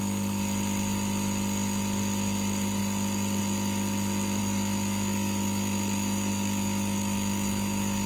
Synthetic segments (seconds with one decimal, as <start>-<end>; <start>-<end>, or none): 4.4-8.1